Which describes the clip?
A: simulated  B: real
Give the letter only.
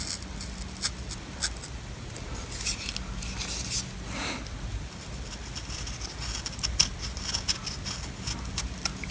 B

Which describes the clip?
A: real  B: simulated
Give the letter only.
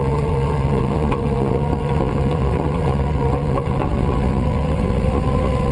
B